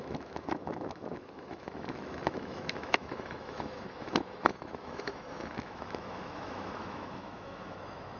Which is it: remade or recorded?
remade